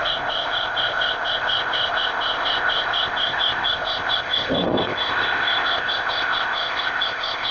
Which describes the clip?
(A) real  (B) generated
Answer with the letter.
B